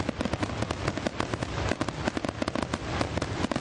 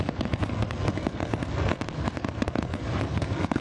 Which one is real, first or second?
first